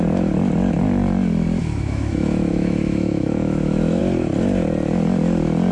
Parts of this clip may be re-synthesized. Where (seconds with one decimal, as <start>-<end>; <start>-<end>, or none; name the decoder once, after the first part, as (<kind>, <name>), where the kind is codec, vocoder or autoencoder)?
1.6-4.0 (autoencoder, DAC-VAE)